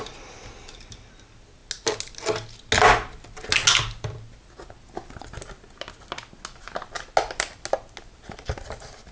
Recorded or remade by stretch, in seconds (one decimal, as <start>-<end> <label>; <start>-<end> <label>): 0.0-9.1 recorded